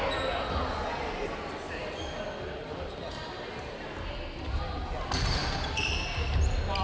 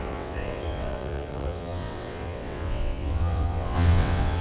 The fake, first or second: second